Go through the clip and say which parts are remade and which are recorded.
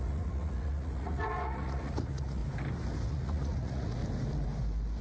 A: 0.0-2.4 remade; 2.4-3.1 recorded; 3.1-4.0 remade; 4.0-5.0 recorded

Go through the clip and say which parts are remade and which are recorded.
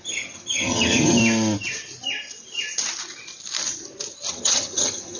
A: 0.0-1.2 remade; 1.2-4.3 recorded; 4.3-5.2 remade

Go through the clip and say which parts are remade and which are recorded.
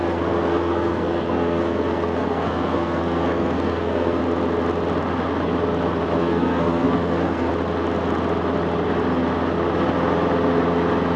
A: 0.0-4.2 remade; 4.2-6.2 recorded; 6.2-7.5 remade; 7.5-11.2 recorded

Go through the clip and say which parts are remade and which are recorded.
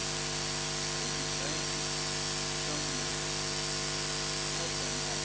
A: 0.0-5.2 recorded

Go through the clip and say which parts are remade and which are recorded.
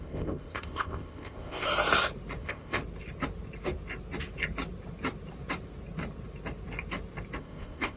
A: 0.0-1.7 remade; 1.7-2.4 recorded; 2.4-2.8 remade; 2.8-7.4 recorded; 7.4-8.0 remade